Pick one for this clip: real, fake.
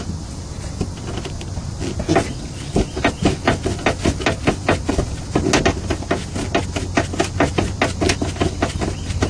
real